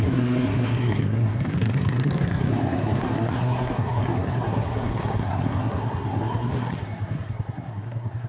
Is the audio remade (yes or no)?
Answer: yes